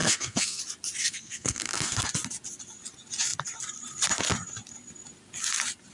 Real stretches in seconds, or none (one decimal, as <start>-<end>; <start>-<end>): 0.6-1.0; 2.1-5.9